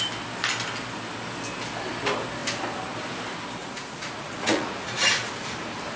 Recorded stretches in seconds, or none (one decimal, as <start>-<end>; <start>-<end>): 0.0-3.6; 5.3-6.0